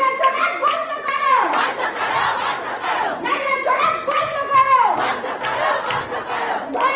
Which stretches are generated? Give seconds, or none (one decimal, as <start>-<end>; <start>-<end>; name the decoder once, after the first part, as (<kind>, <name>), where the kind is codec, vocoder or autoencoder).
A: 0.6-3.8 (vocoder, Vocos)